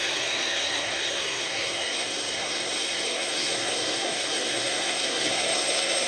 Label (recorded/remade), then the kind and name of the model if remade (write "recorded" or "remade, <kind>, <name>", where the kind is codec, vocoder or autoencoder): remade, codec, SNAC